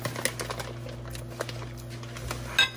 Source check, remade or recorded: recorded